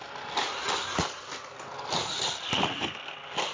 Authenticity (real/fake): fake